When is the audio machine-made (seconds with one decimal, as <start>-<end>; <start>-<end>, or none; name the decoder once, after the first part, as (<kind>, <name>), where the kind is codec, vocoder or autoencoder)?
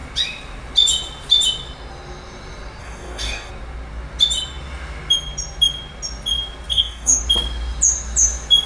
2.8-3.5 (codec, DAC); 6.7-7.2